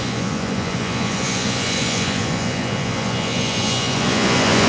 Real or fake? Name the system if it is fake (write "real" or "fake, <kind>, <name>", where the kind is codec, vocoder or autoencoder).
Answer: fake, vocoder, Vocos